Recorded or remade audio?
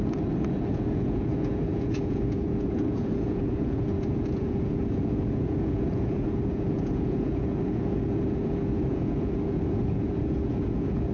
remade